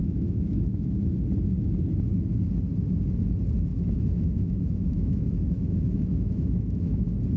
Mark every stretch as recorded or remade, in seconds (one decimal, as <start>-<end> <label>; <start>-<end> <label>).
0.0-1.2 remade; 1.2-3.7 recorded; 3.7-7.0 remade; 7.0-7.4 recorded